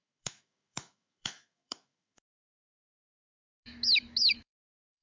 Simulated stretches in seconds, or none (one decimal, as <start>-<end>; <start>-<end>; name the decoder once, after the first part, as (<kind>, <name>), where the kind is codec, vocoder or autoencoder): 0.0-5.0 (autoencoder, DAC-VAE)